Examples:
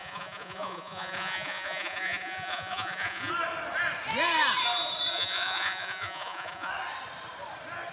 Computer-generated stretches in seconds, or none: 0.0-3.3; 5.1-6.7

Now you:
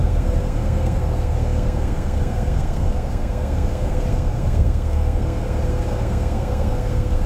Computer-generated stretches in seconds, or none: 0.0-7.3

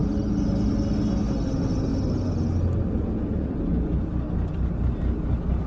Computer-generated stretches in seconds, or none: none

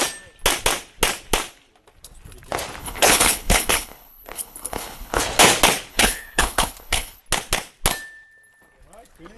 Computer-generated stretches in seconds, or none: 2.8-5.2; 5.9-7.2